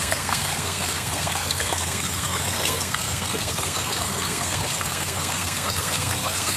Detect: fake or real fake